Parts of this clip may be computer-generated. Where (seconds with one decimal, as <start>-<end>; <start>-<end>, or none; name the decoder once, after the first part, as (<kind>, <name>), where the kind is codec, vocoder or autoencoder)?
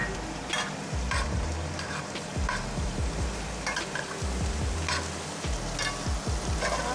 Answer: 0.0-4.1 (vocoder, BigVGAN v2)